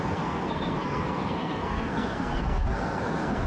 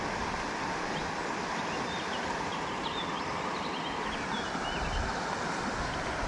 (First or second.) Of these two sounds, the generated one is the first